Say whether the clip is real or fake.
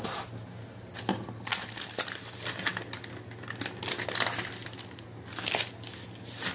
real